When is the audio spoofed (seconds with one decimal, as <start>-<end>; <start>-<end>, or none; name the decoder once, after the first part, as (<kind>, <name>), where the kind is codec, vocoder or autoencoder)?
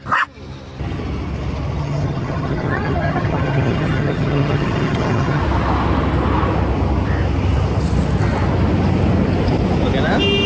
1.8-5.4 (vocoder, HiFi-GAN)